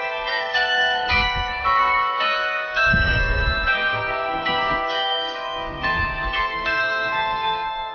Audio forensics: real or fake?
fake